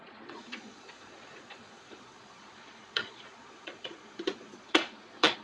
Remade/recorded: remade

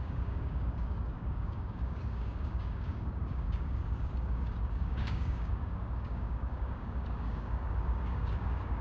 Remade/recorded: remade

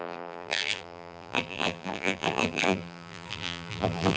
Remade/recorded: remade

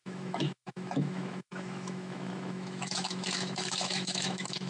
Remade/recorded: remade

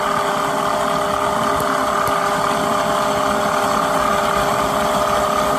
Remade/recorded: recorded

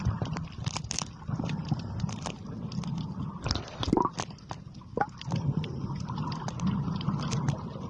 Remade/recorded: remade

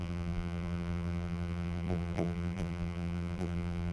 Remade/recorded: remade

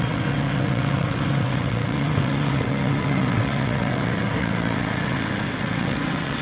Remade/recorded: remade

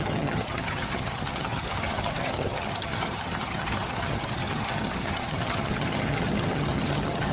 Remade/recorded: remade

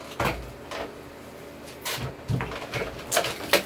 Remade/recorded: recorded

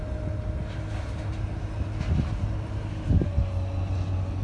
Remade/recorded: recorded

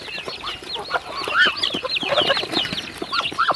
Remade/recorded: recorded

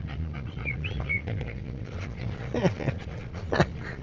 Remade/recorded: remade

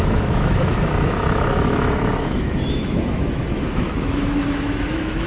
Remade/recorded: remade